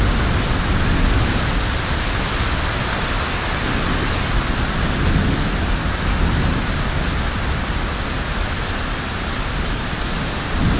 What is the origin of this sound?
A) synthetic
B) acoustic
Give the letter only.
B